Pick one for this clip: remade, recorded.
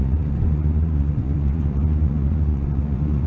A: remade